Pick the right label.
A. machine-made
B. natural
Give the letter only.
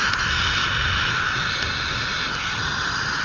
B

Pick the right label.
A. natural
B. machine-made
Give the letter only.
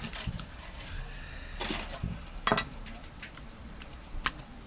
A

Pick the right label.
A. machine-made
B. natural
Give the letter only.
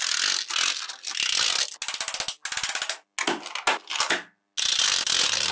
B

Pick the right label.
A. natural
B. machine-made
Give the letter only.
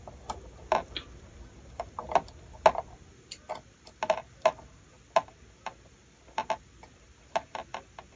A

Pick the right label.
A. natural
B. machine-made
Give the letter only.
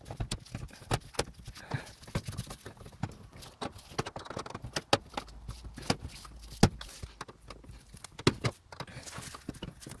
A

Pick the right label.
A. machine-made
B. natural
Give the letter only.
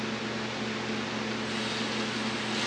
B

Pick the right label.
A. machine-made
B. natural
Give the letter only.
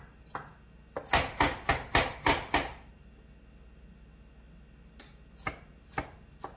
B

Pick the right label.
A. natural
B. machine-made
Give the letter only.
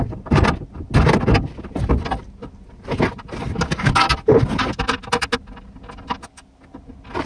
A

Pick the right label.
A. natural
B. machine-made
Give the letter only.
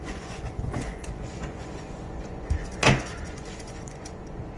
B